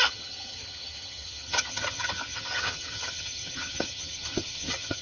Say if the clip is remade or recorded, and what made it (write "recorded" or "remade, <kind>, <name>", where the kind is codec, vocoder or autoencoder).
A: remade, vocoder, HiFi-GAN